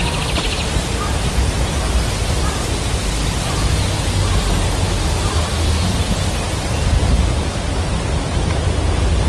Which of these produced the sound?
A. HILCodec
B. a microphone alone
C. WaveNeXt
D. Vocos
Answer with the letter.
B